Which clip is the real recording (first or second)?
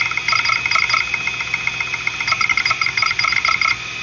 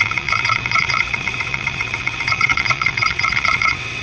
first